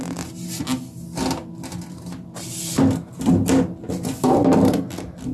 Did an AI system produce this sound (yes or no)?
no